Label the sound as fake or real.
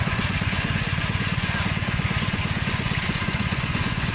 fake